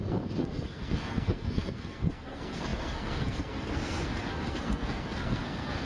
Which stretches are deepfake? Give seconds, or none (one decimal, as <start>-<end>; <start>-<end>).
0.0-5.9